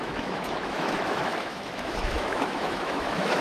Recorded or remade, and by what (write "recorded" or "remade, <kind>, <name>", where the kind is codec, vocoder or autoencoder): remade, autoencoder, DAC-VAE